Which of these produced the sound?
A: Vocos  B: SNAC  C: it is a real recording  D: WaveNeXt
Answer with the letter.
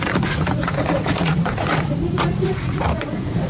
A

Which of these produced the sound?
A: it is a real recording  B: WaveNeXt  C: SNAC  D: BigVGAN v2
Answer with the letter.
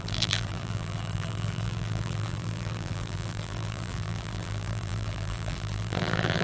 D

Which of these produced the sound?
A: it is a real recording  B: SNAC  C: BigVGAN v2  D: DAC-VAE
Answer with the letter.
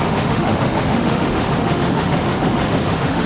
D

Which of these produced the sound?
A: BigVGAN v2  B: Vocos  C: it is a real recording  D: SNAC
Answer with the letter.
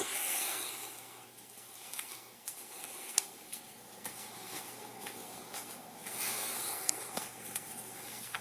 D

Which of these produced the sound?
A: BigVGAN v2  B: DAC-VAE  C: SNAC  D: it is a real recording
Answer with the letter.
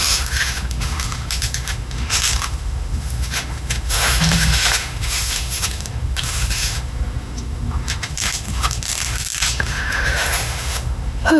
B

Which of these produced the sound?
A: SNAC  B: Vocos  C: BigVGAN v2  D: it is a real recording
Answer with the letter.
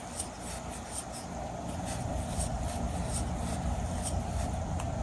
D